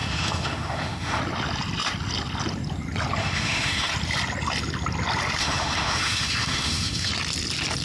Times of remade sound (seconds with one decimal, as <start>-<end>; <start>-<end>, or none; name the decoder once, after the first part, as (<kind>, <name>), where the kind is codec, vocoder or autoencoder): 0.0-1.2 (autoencoder, DAC-VAE); 3.2-3.9; 5.4-7.1